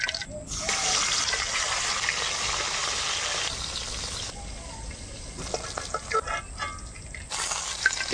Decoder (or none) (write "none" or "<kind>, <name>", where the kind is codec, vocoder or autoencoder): none